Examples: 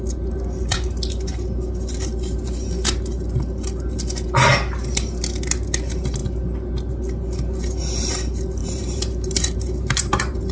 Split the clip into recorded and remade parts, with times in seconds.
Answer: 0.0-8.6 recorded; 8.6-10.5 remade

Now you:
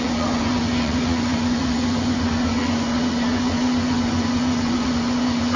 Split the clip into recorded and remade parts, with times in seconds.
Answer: 0.0-5.6 remade

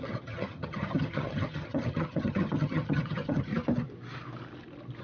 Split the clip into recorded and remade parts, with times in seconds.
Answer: 0.0-3.5 remade; 3.5-5.0 recorded

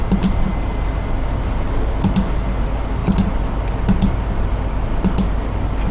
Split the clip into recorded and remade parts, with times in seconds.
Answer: 0.0-5.9 recorded

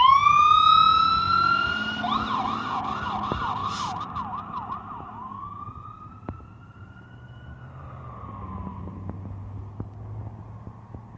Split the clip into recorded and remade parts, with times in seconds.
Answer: 0.0-1.1 recorded; 1.1-2.0 remade; 2.0-3.6 recorded; 3.6-8.1 remade; 8.1-11.2 recorded